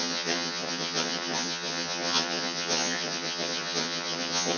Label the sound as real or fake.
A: fake